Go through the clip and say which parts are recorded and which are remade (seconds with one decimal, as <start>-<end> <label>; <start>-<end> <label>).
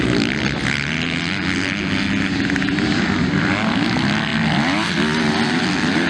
0.0-6.1 recorded